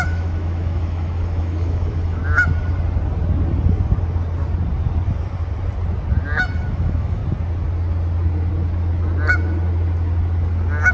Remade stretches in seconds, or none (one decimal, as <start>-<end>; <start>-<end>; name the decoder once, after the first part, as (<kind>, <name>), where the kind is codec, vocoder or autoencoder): 0.0-2.2 (autoencoder, DAC-VAE); 6.7-7.2